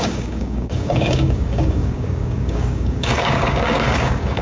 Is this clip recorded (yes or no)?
no